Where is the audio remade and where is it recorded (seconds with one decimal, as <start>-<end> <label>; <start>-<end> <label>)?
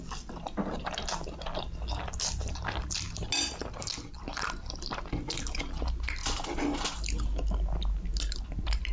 0.0-8.9 recorded